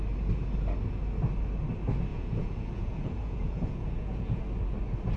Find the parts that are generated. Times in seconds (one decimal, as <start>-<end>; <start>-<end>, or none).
2.1-4.4